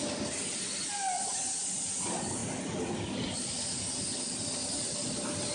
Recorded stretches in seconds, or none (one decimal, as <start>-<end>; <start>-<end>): 0.0-5.5